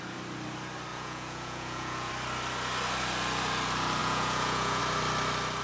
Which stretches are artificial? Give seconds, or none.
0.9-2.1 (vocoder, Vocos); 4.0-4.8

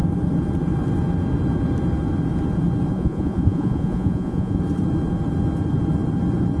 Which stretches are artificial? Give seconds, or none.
2.9-4.6 (vocoder, Vocos)

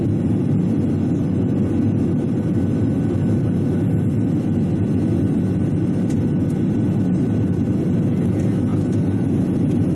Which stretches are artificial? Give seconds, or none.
none

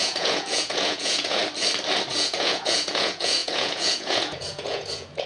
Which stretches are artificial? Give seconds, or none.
0.0-1.4 (vocoder, Vocos); 2.1-5.3